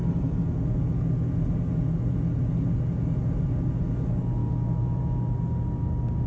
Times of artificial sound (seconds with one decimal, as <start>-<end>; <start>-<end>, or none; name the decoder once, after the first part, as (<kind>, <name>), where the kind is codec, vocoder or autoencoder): 4.4-5.0 (autoencoder, DAC-VAE)